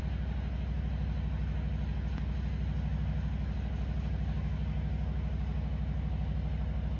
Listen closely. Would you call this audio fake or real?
real